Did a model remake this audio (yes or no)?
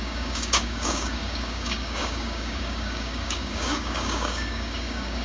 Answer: yes